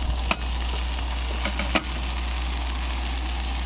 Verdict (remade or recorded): recorded